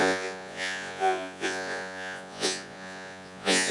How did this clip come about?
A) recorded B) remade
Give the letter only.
B